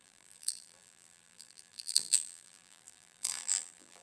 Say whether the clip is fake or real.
fake